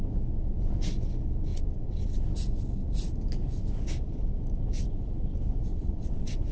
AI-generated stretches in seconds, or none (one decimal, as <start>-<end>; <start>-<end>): 1.5-2.2; 5.7-6.5